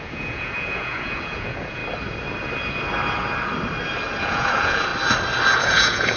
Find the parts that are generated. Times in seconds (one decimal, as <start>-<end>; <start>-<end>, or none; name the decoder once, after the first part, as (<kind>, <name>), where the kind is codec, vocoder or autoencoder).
0.0-1.8 (vocoder, Vocos); 4.2-4.9; 5.6-6.2